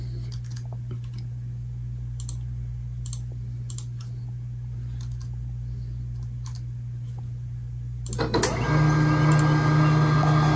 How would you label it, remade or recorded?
recorded